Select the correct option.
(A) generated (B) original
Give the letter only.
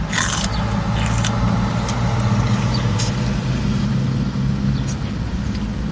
B